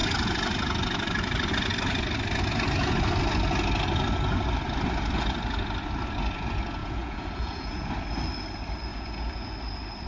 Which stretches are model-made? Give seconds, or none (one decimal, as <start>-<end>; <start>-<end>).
6.8-7.9; 8.9-9.5